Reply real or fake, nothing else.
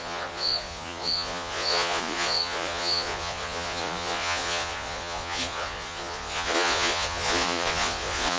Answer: fake